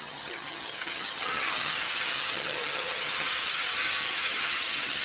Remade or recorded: remade